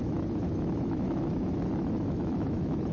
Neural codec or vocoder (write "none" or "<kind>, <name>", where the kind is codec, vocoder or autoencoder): autoencoder, DAC-VAE